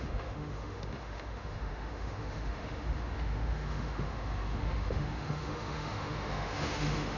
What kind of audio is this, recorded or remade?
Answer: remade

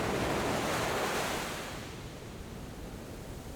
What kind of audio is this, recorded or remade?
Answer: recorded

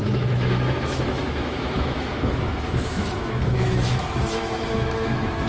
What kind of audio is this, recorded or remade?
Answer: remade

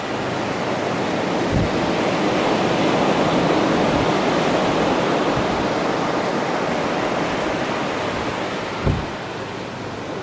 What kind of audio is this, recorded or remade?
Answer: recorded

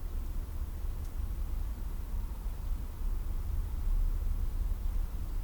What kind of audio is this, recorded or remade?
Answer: recorded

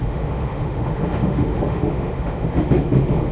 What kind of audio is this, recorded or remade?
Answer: remade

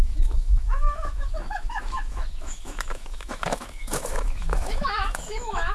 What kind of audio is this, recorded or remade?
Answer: remade